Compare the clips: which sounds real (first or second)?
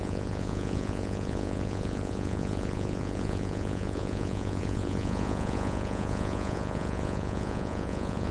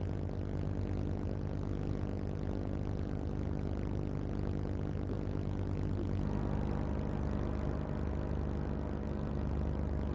second